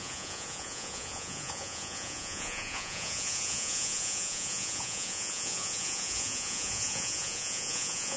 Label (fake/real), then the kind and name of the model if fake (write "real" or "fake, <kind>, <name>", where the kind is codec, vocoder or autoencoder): fake, vocoder, Vocos